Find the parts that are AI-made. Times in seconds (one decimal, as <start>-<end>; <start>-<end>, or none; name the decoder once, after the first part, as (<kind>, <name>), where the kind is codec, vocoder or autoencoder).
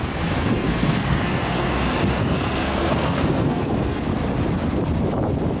0.0-1.7 (codec, SNAC); 2.2-4.1